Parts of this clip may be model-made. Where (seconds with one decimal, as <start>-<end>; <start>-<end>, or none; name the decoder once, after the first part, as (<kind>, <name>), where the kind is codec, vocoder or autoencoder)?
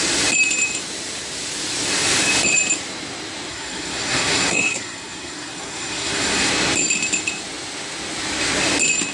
3.5-6.5 (codec, SNAC)